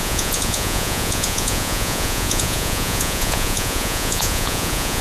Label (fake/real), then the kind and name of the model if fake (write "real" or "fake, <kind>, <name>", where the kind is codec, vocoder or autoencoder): fake, vocoder, Vocos